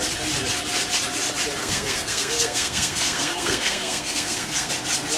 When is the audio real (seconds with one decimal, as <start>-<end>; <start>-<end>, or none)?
0.0-1.6; 4.7-5.2